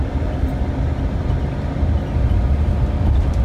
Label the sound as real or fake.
real